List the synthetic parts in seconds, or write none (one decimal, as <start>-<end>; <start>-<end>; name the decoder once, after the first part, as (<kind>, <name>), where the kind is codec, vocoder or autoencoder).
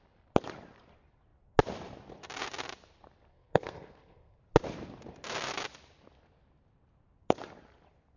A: 3.3-4.4 (codec, SNAC)